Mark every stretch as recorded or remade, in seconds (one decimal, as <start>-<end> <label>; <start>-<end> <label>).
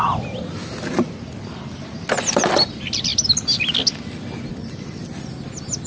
0.0-5.9 recorded